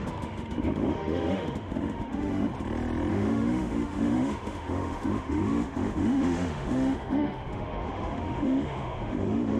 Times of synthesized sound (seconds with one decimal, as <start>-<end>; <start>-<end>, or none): 0.0-2.5; 3.1-9.6